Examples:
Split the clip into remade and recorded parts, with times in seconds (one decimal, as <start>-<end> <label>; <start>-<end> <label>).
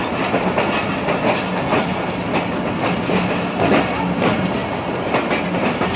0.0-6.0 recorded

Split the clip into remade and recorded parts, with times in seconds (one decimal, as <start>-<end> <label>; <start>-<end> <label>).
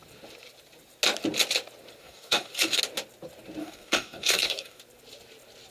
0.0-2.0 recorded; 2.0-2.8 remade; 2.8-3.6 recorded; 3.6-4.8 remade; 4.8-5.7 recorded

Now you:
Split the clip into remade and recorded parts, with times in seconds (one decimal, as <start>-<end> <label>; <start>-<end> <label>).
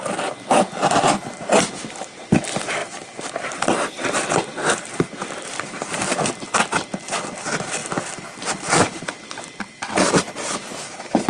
0.0-2.8 remade; 2.8-3.4 recorded; 3.4-11.3 remade